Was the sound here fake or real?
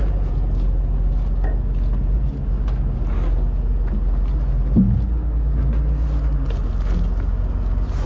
real